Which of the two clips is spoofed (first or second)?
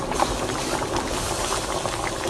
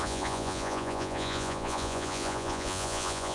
second